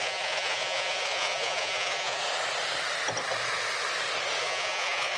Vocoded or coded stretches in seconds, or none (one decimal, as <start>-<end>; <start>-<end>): 0.0-2.2; 4.4-5.2